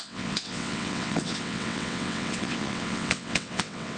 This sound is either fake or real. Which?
fake